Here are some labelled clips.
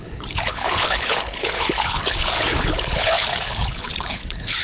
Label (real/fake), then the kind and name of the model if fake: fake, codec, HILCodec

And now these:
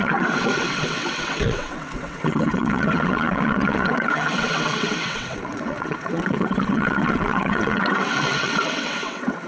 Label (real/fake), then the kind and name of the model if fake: fake, vocoder, WaveNeXt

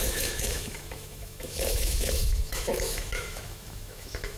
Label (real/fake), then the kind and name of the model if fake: fake, autoencoder, DAC-VAE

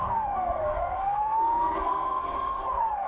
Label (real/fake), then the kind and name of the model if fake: fake, codec, SNAC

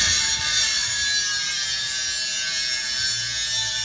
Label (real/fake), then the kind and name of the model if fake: real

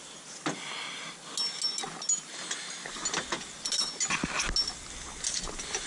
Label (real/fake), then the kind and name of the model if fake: real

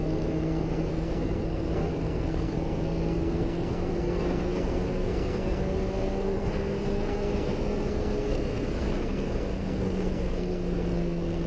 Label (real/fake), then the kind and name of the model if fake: fake, codec, SNAC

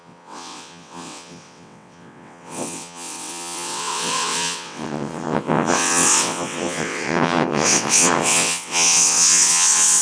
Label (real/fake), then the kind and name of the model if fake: fake, vocoder, WaveNeXt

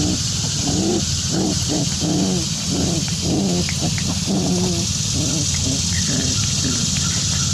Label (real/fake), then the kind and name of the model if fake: real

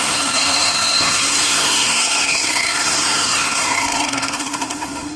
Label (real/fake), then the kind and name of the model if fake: fake, codec, SNAC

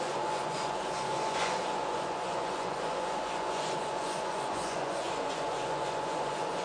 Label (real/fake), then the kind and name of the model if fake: fake, vocoder, Vocos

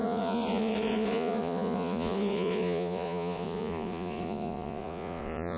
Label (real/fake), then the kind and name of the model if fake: fake, vocoder, Vocos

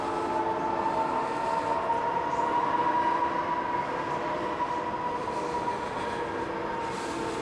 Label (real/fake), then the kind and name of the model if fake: real